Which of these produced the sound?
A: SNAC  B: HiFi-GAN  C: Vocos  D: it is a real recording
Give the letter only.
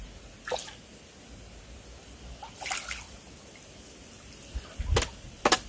D